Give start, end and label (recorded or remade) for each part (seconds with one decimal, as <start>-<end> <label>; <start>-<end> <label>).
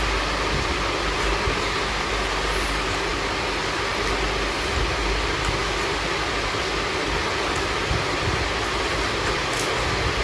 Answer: 0.0-10.2 recorded